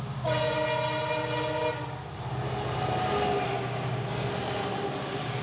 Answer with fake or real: real